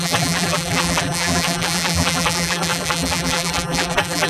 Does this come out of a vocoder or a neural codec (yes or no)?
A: yes